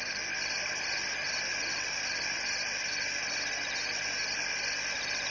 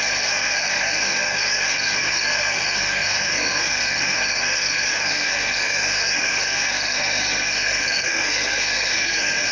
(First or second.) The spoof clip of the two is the second